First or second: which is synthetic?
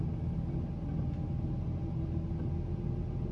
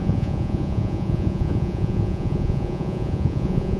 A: second